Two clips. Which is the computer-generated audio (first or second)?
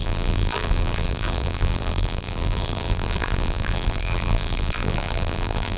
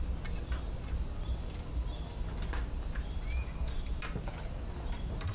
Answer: first